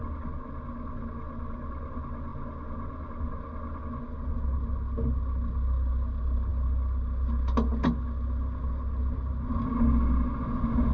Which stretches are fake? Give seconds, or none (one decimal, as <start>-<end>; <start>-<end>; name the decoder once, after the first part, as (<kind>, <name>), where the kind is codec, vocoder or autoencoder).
none